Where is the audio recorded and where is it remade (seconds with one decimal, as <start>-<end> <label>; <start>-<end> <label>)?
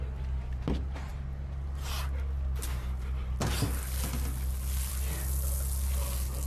0.0-6.5 recorded